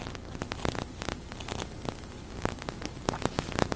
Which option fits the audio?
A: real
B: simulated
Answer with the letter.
A